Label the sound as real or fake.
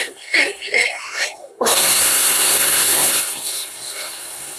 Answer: fake